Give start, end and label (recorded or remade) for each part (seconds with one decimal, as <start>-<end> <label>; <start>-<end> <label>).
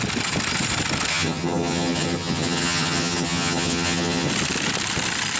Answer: 0.0-1.1 recorded; 1.1-4.3 remade; 4.3-5.4 recorded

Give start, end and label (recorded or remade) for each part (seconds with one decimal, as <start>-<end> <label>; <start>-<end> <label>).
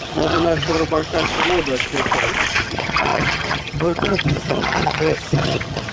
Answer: 0.0-1.3 remade; 1.3-2.5 recorded; 2.5-5.9 remade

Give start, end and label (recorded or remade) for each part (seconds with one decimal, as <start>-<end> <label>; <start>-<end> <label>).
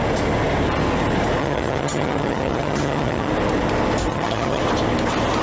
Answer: 0.0-1.4 recorded; 1.4-3.3 remade; 3.3-4.1 recorded; 4.1-4.6 remade; 4.6-5.4 recorded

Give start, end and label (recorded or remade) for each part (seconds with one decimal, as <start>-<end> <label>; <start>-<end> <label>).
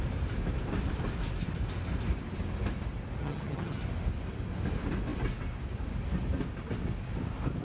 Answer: 0.0-3.2 recorded; 3.2-3.8 remade; 3.8-7.6 recorded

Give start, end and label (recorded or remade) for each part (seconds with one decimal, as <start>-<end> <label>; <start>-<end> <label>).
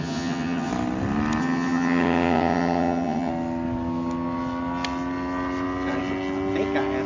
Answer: 0.0-0.7 remade; 0.7-1.4 recorded; 1.4-3.3 remade; 3.3-7.1 recorded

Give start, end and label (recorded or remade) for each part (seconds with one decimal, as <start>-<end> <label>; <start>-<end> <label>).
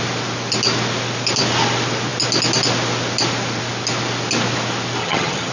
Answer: 0.0-5.0 recorded; 5.0-5.5 remade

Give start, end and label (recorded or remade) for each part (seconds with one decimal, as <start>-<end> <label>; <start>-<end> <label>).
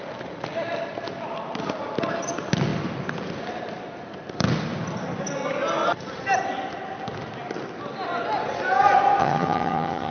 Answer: 0.0-9.2 recorded; 9.2-10.1 remade